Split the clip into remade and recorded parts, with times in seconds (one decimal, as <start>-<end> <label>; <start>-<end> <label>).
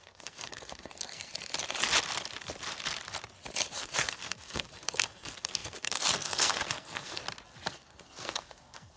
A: 0.0-1.3 remade; 1.3-3.7 recorded; 3.7-7.2 remade; 7.2-7.7 recorded; 7.7-9.0 remade